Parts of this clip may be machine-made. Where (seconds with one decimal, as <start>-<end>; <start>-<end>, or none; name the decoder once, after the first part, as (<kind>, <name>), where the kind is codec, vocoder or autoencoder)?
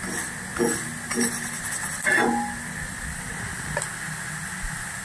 none